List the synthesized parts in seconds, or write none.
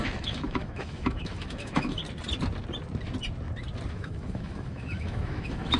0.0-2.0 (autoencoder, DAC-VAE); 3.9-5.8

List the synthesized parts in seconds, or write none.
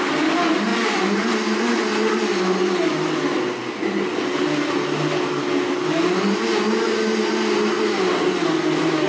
none